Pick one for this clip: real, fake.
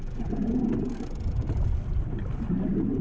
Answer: real